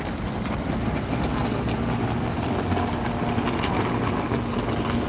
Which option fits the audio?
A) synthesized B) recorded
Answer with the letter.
B